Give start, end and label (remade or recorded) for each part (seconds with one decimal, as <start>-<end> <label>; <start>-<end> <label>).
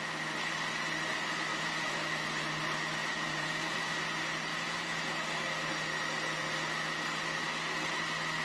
0.0-1.5 recorded; 1.5-2.0 remade; 2.0-3.0 recorded; 3.0-3.9 remade; 3.9-4.5 recorded; 4.5-5.0 remade; 5.0-8.4 recorded